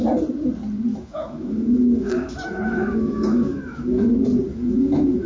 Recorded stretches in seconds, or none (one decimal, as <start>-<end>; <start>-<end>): 0.0-0.9; 4.1-4.5